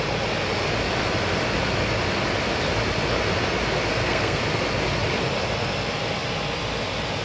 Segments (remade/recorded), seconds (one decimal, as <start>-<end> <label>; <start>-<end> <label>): 0.0-3.9 recorded; 3.9-4.4 remade; 4.4-7.2 recorded